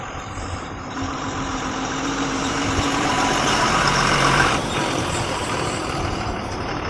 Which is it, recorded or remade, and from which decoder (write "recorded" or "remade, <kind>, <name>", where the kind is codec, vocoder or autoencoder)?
remade, vocoder, BigVGAN v2